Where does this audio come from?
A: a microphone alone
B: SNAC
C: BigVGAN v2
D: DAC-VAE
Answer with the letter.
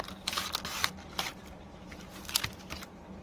C